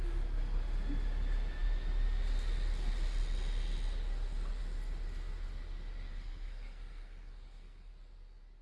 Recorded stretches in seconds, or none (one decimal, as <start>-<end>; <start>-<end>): 0.0-6.1; 7.9-8.6